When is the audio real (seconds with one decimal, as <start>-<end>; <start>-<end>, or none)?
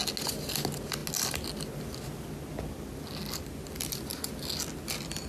0.0-5.3